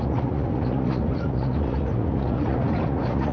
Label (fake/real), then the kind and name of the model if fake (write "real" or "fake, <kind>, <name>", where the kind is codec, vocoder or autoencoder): fake, vocoder, Vocos